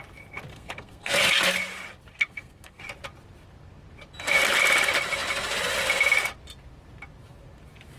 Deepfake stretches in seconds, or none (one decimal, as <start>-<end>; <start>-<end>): 0.5-1.2; 2.1-2.8